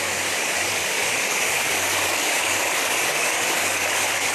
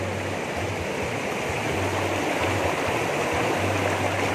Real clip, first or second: second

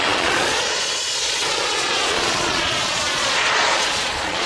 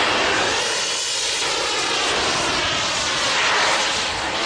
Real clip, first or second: second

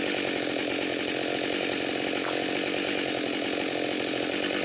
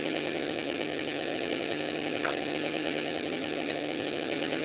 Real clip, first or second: first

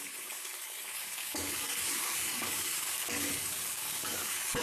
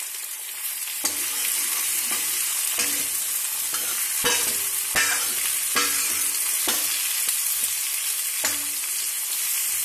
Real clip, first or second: second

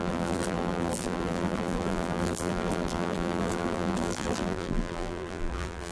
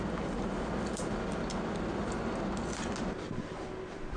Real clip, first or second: second